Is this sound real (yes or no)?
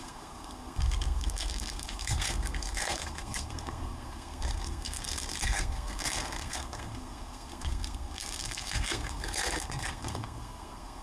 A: no